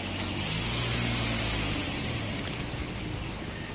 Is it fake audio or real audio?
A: real